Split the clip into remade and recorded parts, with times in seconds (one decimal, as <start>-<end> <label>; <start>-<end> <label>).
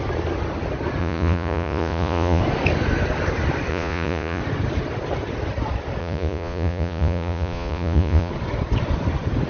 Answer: 0.0-1.0 recorded; 1.0-2.4 remade; 2.4-3.7 recorded; 3.7-4.4 remade; 4.4-6.0 recorded; 6.0-8.3 remade; 8.3-9.5 recorded